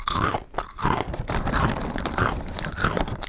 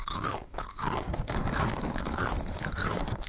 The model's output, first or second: second